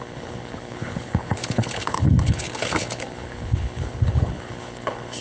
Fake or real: fake